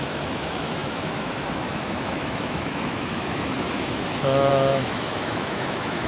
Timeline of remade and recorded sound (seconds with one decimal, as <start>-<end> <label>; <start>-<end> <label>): 0.0-6.1 remade